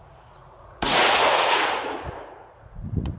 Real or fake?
fake